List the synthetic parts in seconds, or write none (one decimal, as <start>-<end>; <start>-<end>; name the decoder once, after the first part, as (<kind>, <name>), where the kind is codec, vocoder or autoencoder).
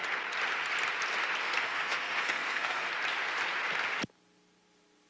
1.4-2.9 (codec, SNAC)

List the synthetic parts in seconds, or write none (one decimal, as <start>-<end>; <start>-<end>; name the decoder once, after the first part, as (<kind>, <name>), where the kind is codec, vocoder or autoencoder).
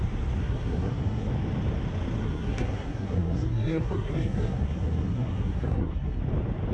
0.4-1.3 (codec, SNAC); 2.2-6.2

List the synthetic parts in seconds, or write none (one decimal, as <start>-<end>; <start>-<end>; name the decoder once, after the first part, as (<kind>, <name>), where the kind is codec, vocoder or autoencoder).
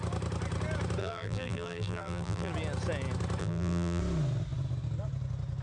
1.0-2.5 (vocoder, BigVGAN v2); 3.4-4.0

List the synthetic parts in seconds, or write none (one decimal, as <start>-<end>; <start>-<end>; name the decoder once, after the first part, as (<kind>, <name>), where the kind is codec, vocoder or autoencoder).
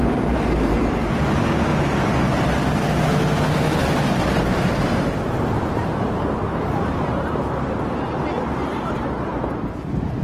4.2-8.1 (vocoder, BigVGAN v2); 9.3-10.2